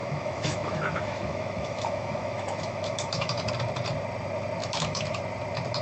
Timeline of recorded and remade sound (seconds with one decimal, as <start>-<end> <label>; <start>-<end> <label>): 0.0-3.5 remade; 3.5-4.6 recorded; 4.6-5.2 remade; 5.2-5.8 recorded